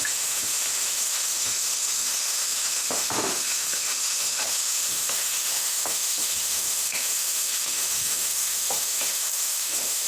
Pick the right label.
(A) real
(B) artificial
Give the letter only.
B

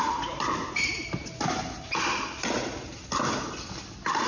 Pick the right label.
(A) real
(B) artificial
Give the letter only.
A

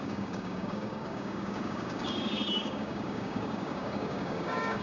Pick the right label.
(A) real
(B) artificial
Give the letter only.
B